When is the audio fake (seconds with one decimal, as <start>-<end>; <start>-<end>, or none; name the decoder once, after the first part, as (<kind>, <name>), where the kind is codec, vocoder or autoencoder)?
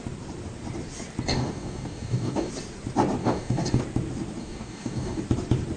1.3-2.5 (codec, DAC); 3.2-3.8; 4.4-5.2